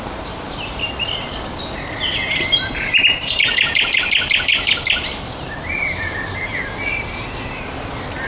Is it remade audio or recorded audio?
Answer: recorded